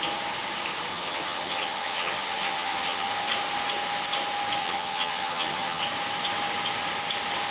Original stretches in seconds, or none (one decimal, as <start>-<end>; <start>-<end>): 0.0-0.9; 3.1-4.6; 5.8-7.5